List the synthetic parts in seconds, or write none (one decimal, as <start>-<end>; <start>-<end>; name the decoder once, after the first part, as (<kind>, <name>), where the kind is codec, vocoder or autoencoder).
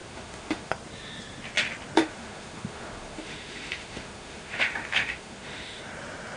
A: 0.0-0.7 (autoencoder, DAC-VAE); 2.0-5.8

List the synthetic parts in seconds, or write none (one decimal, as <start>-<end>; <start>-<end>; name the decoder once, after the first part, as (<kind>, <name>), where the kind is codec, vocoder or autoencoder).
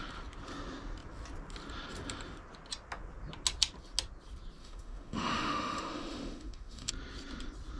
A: 4.6-6.9 (autoencoder, DAC-VAE)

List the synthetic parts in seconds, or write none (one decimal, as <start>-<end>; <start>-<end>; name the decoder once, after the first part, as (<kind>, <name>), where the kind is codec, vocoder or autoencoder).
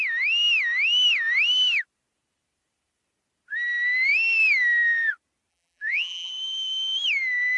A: 5.5-6.3 (vocoder, BigVGAN v2)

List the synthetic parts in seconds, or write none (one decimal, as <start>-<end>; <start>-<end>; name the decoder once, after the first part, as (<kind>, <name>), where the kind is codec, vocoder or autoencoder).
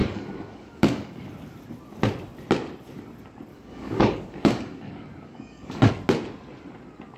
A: 0.0-1.3 (codec, DAC); 3.5-5.9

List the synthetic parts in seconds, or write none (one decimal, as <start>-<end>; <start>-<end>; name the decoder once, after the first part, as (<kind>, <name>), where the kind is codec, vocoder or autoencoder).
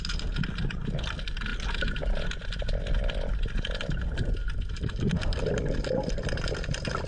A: none